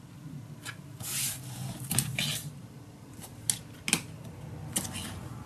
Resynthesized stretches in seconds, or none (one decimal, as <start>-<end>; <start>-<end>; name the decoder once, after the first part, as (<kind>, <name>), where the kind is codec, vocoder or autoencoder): none